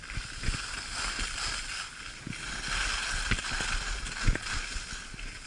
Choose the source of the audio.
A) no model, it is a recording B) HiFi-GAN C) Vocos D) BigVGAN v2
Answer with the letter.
A